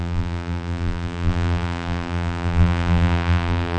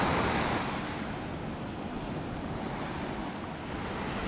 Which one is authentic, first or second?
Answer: second